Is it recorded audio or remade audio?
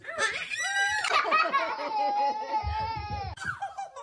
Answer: recorded